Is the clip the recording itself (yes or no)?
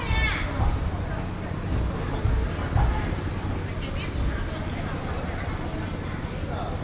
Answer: yes